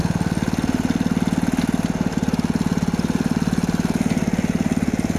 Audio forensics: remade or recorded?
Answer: recorded